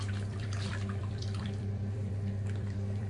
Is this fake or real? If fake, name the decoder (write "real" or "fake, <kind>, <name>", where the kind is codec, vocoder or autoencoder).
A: fake, vocoder, BigVGAN v2